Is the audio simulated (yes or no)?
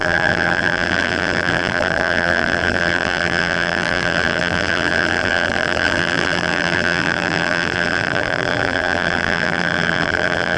yes